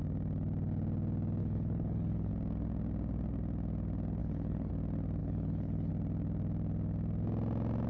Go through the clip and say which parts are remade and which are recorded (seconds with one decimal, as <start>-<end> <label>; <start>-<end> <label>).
0.0-1.4 recorded; 1.4-2.3 remade; 2.3-4.2 recorded; 4.2-4.7 remade; 4.7-5.2 recorded; 5.2-5.9 remade; 5.9-7.9 recorded

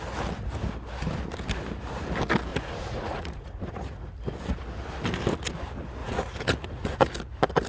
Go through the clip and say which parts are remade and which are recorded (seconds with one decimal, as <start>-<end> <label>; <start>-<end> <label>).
0.0-2.5 recorded; 2.5-4.1 remade; 4.1-6.0 recorded; 6.0-7.0 remade; 7.0-7.7 recorded

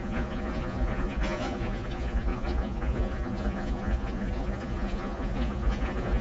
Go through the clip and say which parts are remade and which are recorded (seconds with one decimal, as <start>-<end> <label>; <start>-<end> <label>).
0.0-6.2 remade